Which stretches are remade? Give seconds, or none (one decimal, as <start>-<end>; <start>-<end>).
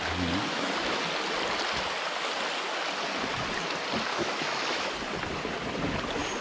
0.5-1.0; 4.1-4.9